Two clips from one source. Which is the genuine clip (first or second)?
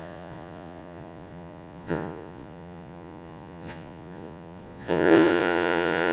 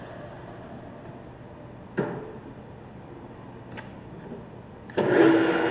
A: second